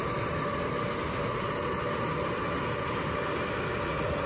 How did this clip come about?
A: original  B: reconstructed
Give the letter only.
A